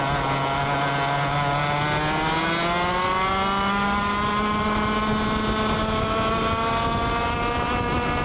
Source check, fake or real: real